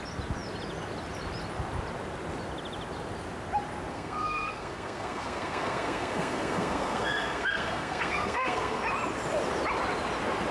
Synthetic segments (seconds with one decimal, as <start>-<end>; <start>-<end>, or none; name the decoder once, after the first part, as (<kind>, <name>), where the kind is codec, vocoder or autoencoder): 3.9-8.8 (codec, SNAC)